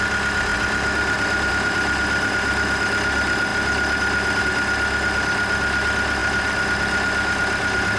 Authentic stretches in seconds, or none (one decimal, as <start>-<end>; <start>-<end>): 0.0-8.0